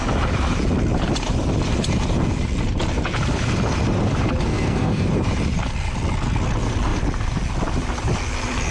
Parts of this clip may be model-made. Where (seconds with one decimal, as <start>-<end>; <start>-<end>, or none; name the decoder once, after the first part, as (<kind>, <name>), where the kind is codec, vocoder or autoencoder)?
4.5-5.1 (codec, SNAC)